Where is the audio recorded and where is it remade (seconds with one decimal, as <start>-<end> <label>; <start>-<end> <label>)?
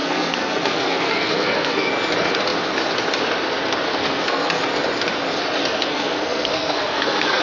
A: 0.0-1.9 remade; 1.9-4.0 recorded; 4.0-4.6 remade; 4.6-5.6 recorded; 5.6-7.4 remade